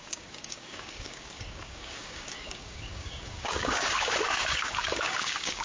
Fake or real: fake